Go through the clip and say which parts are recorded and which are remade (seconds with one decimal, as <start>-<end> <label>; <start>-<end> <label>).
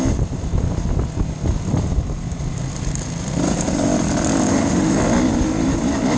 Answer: 0.0-4.5 recorded; 4.5-5.0 remade; 5.0-6.2 recorded